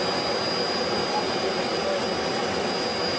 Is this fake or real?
real